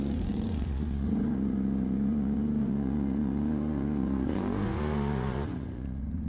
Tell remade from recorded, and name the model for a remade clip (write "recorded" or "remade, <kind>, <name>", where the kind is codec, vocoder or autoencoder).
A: remade, vocoder, Vocos